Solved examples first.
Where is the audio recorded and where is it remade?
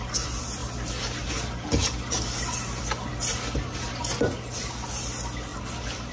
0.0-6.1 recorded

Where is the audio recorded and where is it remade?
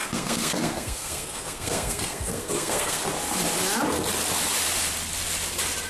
0.0-3.0 remade; 3.0-5.9 recorded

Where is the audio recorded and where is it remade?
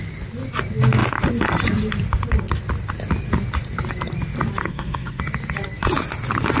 0.0-4.6 recorded; 4.6-5.2 remade; 5.2-6.6 recorded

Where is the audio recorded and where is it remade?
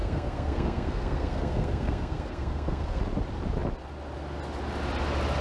0.0-3.0 remade; 3.0-5.4 recorded